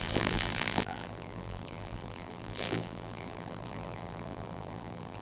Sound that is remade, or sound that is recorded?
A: remade